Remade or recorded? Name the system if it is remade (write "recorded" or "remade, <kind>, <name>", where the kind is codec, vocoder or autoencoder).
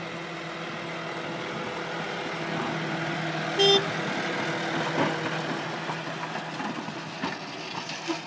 recorded